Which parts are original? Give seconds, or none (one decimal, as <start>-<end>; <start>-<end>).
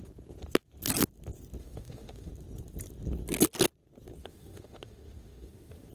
0.0-1.6; 2.3-4.2